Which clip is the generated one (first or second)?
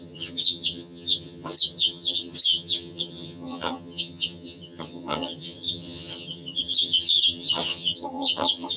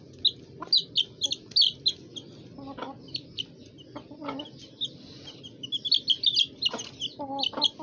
first